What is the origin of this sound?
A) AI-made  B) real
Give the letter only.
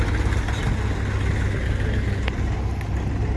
B